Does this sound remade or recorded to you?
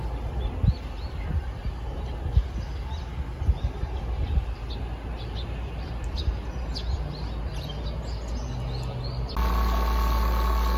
recorded